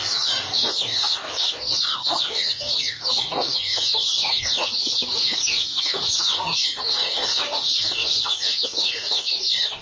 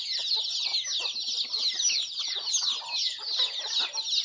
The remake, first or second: first